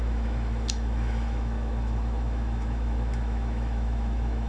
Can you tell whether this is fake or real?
fake